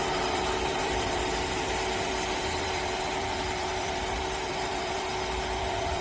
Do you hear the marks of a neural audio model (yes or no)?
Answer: yes